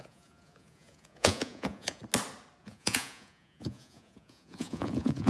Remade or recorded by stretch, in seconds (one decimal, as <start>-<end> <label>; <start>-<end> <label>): 0.0-2.0 remade; 2.0-2.6 recorded; 2.6-5.3 remade

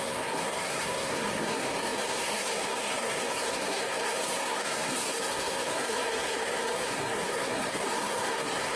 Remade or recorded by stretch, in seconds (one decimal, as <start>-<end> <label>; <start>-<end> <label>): 0.0-8.8 remade